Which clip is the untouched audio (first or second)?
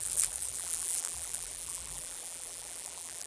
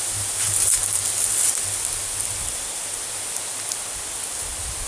second